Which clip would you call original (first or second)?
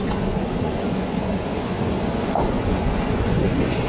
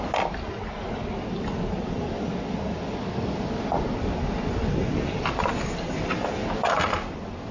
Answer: second